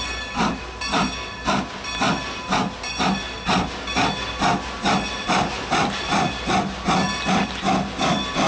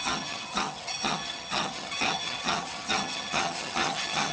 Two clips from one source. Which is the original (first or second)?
first